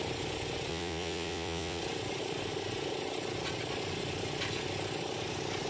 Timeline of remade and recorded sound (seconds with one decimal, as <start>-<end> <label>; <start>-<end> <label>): 0.0-0.7 recorded; 0.7-1.8 remade; 1.8-5.7 recorded